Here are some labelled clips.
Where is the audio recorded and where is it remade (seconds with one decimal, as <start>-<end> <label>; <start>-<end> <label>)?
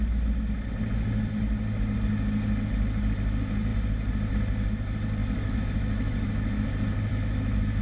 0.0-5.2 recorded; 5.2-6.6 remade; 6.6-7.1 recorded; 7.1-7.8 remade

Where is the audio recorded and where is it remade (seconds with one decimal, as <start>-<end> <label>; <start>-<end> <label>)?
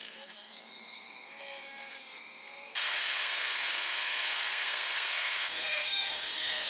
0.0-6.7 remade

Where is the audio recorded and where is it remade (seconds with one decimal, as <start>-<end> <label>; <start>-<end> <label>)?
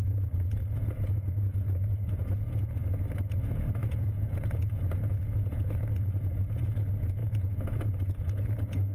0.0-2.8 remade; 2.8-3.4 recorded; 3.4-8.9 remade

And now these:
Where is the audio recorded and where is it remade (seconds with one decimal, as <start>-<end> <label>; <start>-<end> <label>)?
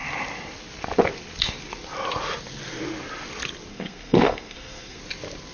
0.0-3.7 recorded; 3.7-5.0 remade; 5.0-5.5 recorded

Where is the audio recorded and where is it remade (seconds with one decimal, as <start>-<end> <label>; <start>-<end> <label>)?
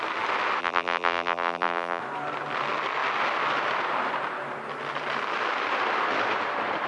0.0-0.6 recorded; 0.6-2.0 remade; 2.0-6.9 recorded